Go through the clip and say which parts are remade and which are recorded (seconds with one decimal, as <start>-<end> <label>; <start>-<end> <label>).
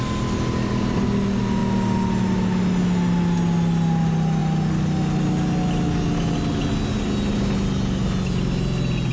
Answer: 0.0-9.1 recorded